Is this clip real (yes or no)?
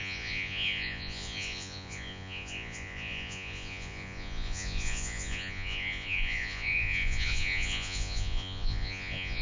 no